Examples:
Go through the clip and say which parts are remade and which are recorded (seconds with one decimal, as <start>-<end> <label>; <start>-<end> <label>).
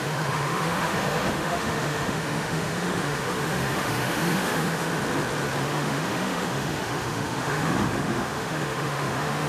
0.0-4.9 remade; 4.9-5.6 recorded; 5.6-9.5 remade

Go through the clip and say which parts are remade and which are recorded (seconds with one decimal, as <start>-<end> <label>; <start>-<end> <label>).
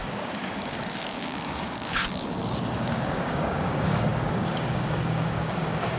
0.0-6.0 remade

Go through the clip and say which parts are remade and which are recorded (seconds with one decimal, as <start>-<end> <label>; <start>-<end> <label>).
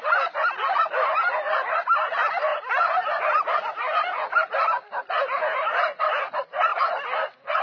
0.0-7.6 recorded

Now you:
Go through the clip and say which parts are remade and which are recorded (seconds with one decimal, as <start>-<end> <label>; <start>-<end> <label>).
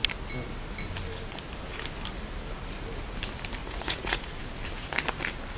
0.0-3.6 recorded; 3.6-4.4 remade; 4.4-5.6 recorded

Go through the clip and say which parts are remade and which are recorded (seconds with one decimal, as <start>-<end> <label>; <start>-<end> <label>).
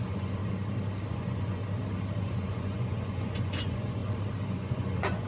0.0-0.4 remade; 0.4-1.1 recorded; 1.1-1.6 remade; 1.6-2.2 recorded; 2.2-4.0 remade; 4.0-4.5 recorded; 4.5-5.3 remade